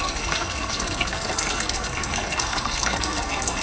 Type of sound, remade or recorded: remade